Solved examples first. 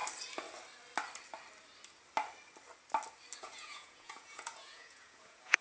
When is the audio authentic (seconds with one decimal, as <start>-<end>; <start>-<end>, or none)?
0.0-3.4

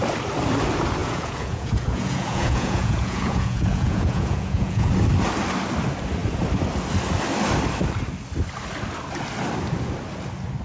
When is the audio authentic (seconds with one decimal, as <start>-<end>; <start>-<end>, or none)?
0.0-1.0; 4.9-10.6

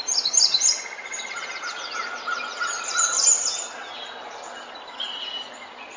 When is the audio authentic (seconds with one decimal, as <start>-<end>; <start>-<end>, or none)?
0.0-6.0

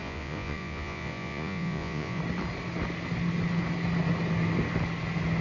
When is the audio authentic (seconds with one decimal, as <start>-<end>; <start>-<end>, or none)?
2.2-5.4

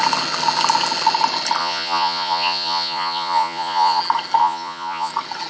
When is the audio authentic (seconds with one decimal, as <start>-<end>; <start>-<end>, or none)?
0.0-1.6; 4.0-4.4; 5.1-5.5

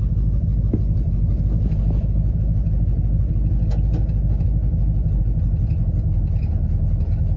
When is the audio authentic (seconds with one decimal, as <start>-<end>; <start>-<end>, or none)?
0.0-7.4